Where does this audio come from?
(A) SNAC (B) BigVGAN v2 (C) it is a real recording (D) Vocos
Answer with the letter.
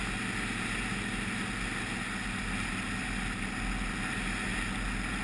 C